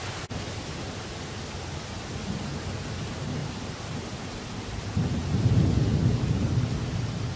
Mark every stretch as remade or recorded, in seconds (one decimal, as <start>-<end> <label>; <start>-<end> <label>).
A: 0.0-5.2 recorded; 5.2-5.8 remade; 5.8-7.4 recorded